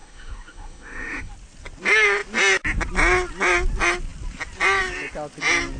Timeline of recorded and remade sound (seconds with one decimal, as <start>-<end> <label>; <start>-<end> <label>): 0.0-1.3 remade; 1.3-5.8 recorded